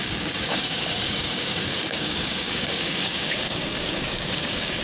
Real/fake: fake